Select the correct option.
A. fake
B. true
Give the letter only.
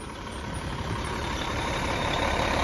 A